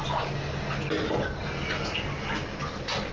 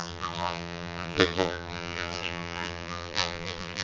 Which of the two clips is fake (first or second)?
second